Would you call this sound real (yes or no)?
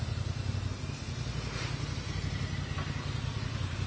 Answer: yes